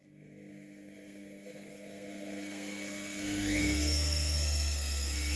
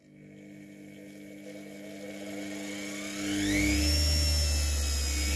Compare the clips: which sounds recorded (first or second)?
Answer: second